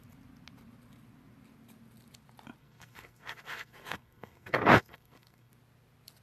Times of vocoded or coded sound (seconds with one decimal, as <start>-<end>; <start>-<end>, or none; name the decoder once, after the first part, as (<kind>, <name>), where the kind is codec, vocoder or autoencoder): 2.6-5.5 (codec, SNAC)